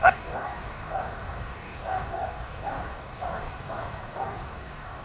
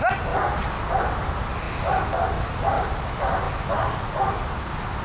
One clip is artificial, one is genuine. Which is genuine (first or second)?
second